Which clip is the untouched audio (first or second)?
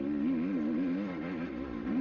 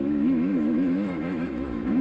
first